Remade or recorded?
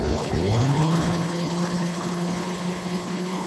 remade